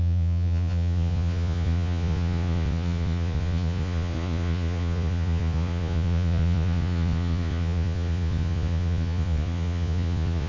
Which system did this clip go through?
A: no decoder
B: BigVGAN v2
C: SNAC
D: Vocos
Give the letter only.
D